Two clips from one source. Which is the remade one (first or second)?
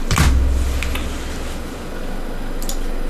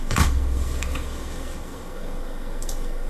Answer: second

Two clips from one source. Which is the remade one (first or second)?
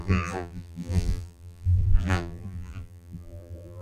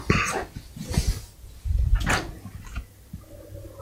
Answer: first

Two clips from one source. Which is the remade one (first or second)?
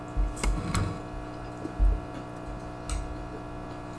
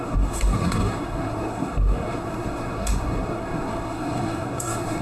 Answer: second